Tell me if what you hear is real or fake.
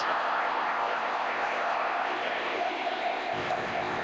fake